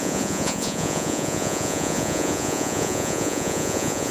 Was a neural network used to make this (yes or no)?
yes